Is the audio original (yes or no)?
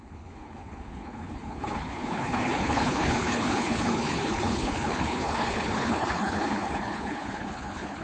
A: no